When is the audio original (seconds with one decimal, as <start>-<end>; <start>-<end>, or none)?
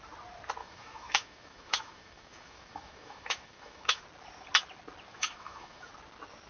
0.0-0.6; 4.0-5.1; 5.9-6.5